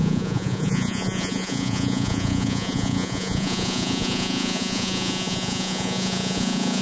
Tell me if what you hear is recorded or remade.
remade